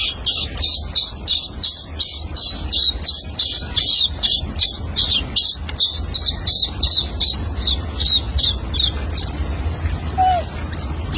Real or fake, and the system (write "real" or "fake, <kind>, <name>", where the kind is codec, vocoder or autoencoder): real